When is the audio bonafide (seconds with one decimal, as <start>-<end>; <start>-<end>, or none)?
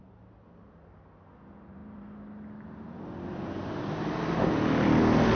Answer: 0.0-5.4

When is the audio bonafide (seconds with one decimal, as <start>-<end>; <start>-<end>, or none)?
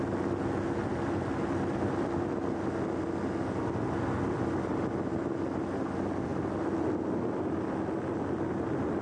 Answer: 0.0-9.0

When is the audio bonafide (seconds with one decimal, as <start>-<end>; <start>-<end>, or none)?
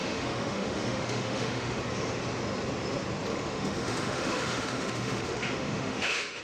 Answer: 1.8-3.3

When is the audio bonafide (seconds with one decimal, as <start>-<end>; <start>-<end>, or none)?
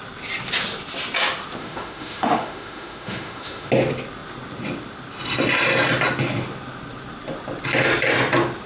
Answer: 0.0-1.6; 3.7-8.7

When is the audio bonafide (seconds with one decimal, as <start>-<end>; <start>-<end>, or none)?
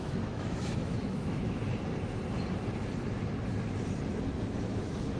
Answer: 1.6-4.5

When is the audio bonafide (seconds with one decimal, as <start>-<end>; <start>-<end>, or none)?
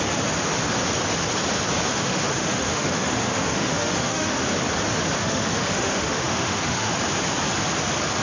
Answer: 0.0-1.9; 4.4-5.2; 6.9-8.2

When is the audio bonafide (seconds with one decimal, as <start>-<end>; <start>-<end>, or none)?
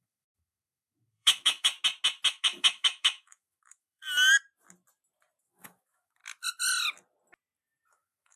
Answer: 1.7-2.3; 4.0-5.4; 6.2-7.9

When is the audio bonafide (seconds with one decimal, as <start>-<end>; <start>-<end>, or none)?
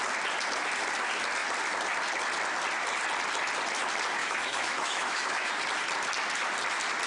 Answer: 0.0-4.2; 5.5-7.1